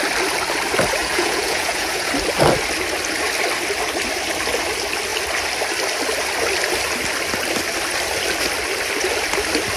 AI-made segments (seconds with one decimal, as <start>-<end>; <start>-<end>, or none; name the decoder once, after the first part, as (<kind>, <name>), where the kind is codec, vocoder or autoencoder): 1.0-2.1 (vocoder, Vocos)